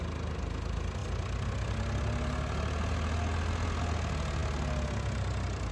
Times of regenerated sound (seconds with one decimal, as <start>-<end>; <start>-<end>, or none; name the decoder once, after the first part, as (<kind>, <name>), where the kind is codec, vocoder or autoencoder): none